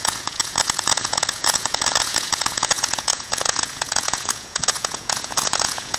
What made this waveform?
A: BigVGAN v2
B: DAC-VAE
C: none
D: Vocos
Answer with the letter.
D